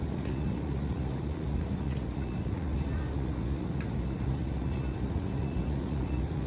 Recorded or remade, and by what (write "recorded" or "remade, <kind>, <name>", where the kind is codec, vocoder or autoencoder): remade, vocoder, Vocos